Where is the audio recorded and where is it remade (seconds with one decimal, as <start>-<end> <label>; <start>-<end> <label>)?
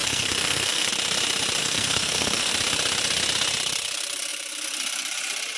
0.0-0.9 remade; 0.9-1.6 recorded; 1.6-2.5 remade; 2.5-5.6 recorded